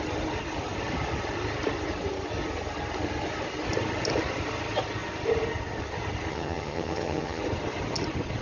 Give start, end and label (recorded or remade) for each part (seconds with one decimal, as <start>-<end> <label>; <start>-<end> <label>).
0.0-6.3 recorded; 6.3-7.4 remade; 7.4-8.4 recorded